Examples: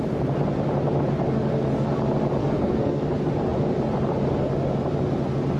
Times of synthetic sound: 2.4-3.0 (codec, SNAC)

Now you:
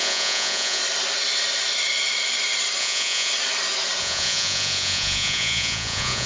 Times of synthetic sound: 0.0-0.8 (vocoder, Vocos); 2.8-3.3; 4.0-6.3